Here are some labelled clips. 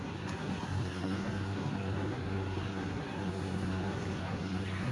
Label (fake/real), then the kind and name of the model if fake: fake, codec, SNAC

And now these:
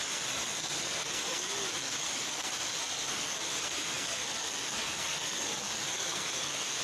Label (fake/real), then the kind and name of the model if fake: fake, codec, SNAC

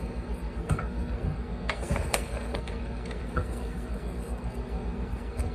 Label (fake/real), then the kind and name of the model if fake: fake, codec, SNAC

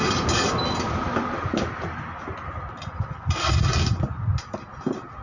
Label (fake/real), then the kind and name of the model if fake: real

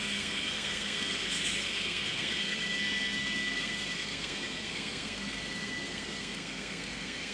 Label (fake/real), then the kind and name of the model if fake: fake, codec, SNAC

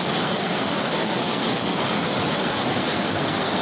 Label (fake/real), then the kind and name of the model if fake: fake, codec, SNAC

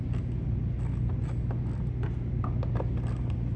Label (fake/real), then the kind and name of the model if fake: real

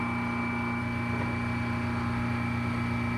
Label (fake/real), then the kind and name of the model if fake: real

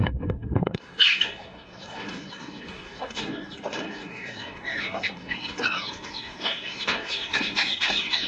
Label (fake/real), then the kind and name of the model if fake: fake, codec, SNAC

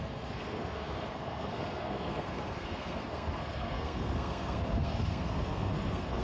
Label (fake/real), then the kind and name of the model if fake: fake, codec, SNAC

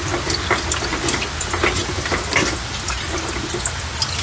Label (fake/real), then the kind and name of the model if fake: real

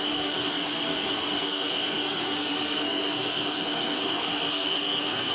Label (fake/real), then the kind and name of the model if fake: fake, codec, SNAC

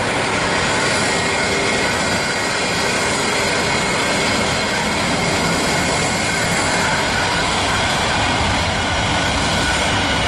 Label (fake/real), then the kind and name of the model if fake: real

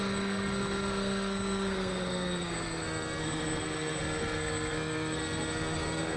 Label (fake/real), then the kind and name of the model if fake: fake, codec, SNAC